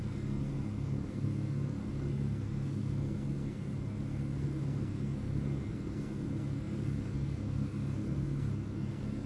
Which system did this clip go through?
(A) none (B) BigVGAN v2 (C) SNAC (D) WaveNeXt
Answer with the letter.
C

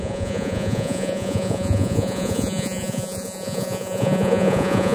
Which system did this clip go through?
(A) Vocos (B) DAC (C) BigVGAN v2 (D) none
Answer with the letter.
A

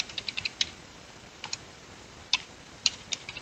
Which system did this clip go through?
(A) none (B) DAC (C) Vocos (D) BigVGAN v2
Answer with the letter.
D